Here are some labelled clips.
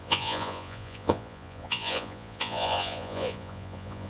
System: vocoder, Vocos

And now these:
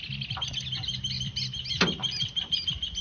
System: none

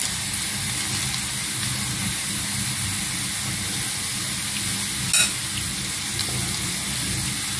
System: none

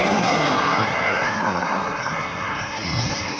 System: codec, SNAC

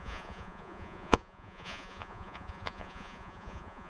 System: vocoder, Vocos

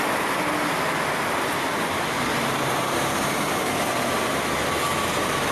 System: none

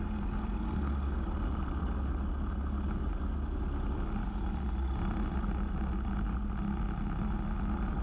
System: none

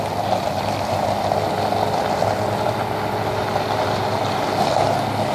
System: none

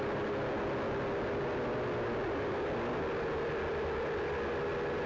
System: none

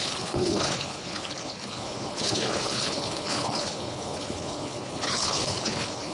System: codec, HILCodec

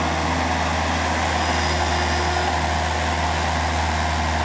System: none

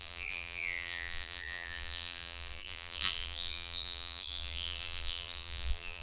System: vocoder, BigVGAN v2